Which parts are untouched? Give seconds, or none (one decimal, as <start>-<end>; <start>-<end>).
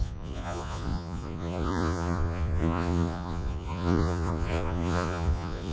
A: none